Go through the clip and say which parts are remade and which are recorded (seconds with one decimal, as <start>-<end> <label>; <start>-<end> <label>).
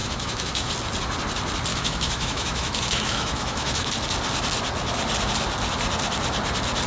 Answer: 0.0-0.7 remade; 0.7-1.7 recorded; 1.7-3.9 remade; 3.9-6.9 recorded